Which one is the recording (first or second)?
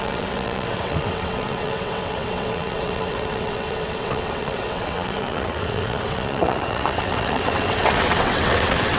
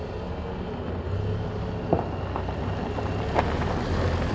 second